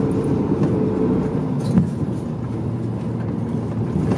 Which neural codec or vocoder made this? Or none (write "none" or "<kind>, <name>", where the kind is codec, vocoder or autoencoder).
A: none